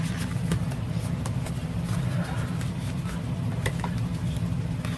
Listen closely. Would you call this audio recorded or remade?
recorded